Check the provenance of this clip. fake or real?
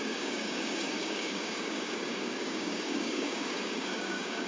fake